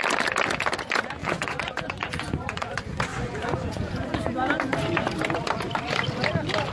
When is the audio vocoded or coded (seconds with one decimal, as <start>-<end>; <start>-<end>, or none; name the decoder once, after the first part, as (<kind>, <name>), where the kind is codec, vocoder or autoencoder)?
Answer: 1.2-2.7 (vocoder, Vocos); 3.1-4.1